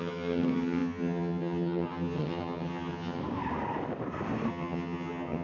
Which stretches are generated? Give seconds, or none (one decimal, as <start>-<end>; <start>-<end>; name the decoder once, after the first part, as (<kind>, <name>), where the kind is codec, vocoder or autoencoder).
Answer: 0.0-3.2 (vocoder, HiFi-GAN); 4.5-5.4